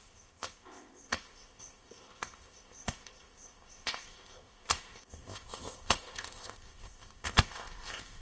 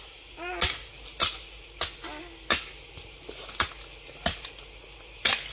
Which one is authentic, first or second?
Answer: second